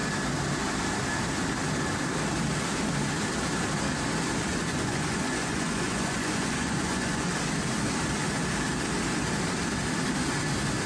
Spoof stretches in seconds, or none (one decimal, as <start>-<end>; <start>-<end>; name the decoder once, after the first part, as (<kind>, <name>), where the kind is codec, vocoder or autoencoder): 4.5-7.3 (vocoder, Vocos)